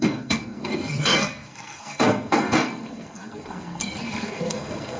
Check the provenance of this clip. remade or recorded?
remade